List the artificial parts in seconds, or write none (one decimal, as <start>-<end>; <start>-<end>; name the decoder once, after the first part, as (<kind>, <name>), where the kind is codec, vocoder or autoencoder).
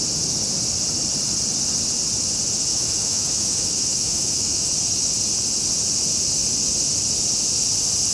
2.7-4.7 (autoencoder, DAC-VAE)